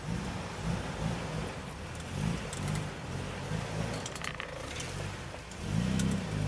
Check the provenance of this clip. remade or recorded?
recorded